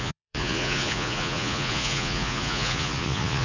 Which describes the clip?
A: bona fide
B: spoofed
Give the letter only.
B